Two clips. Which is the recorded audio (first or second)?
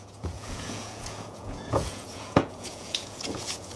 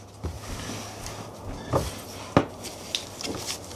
second